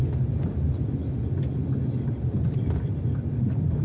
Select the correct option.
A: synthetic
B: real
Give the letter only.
B